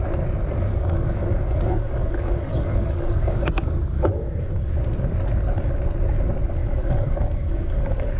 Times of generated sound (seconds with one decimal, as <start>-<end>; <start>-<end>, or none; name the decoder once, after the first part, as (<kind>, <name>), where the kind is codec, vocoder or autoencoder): 0.7-4.7 (codec, DAC); 6.6-8.2